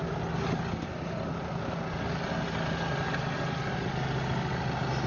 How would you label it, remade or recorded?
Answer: recorded